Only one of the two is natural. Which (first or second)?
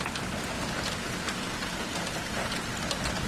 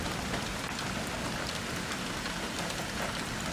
first